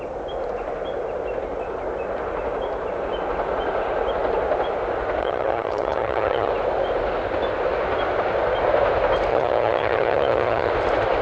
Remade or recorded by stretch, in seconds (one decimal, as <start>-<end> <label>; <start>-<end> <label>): 0.0-5.2 recorded; 5.2-6.5 remade; 6.5-9.3 recorded; 9.3-10.7 remade; 10.7-11.2 recorded